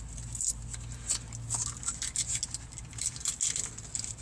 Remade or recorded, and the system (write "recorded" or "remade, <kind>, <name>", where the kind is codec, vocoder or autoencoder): recorded